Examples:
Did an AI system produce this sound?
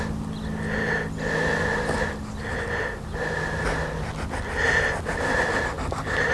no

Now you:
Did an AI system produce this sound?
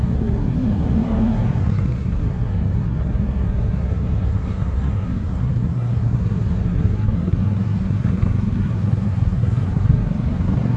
yes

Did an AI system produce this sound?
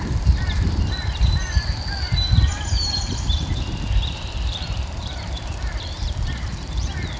yes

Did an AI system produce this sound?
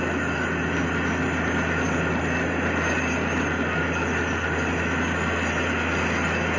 no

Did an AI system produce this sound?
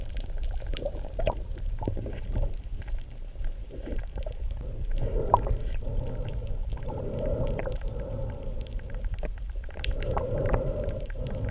yes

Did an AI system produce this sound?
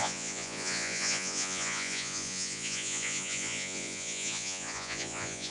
yes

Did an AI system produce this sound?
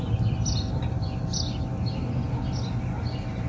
no